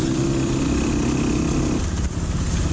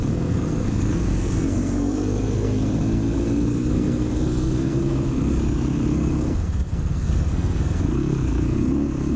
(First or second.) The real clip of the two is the first